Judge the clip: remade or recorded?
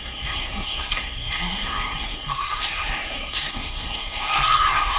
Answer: remade